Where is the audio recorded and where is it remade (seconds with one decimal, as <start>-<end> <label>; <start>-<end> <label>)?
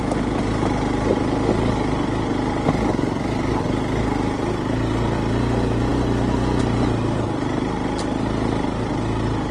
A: 0.0-9.5 recorded